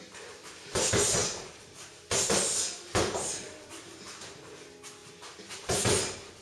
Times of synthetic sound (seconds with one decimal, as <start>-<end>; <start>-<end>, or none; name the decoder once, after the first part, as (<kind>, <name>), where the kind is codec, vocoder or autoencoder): none